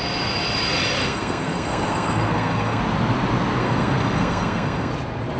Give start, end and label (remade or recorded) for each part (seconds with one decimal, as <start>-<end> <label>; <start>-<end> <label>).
0.0-1.0 recorded; 1.0-2.8 remade; 2.8-3.6 recorded; 3.6-4.9 remade; 4.9-5.4 recorded